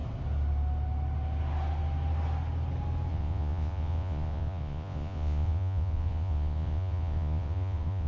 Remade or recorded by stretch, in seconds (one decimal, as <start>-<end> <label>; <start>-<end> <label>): 0.0-3.1 recorded; 3.1-8.1 remade